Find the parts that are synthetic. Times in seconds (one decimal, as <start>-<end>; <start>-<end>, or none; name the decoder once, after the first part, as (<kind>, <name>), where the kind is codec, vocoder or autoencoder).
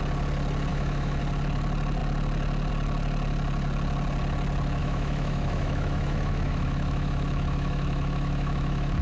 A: 0.7-1.2 (autoencoder, DAC-VAE); 4.8-9.0